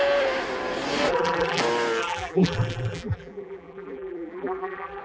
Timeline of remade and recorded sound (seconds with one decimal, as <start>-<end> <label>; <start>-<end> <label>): 0.0-1.1 recorded; 1.1-1.6 remade; 1.6-2.0 recorded; 2.0-5.0 remade